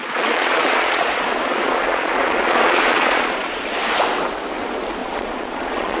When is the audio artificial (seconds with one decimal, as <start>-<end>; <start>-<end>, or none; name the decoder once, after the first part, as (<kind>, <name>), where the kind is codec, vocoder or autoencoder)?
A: 0.0-3.6 (vocoder, Vocos); 5.0-6.0